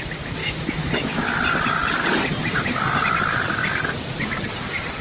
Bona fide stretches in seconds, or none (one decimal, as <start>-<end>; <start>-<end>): 0.0-0.4; 1.4-5.0